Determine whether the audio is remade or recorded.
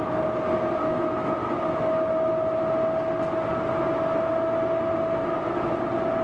recorded